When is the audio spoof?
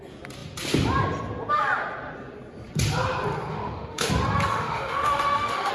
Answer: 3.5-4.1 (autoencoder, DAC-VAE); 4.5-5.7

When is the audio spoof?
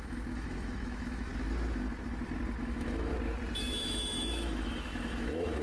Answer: 0.0-1.3 (autoencoder, DAC-VAE); 2.6-3.1; 3.6-5.6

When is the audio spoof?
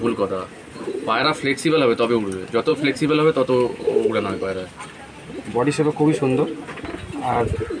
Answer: 2.7-4.4 (autoencoder, DAC-VAE)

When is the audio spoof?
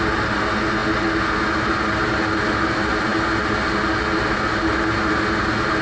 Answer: none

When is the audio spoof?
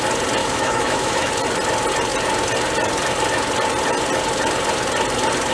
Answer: 0.4-1.3 (autoencoder, DAC-VAE)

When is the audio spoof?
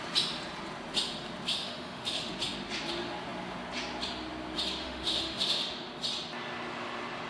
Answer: 1.5-2.3 (autoencoder, DAC-VAE); 4.8-5.6